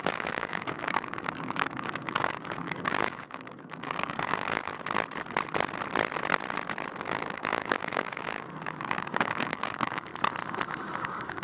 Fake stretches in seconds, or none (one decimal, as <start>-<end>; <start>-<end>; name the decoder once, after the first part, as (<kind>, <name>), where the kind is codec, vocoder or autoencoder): 0.0-4.7 (codec, DAC); 7.0-10.1; 11.0-11.4